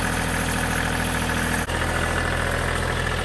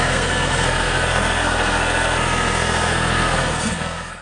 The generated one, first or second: second